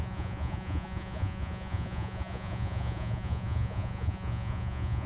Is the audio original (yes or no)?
no